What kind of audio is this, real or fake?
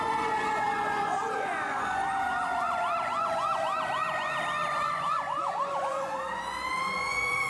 fake